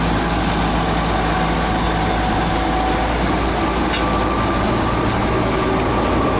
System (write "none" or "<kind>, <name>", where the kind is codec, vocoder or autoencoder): none